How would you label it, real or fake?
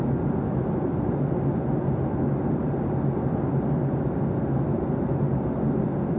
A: real